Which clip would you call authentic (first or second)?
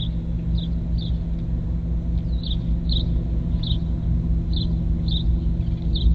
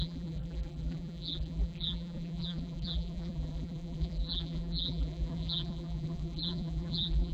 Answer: first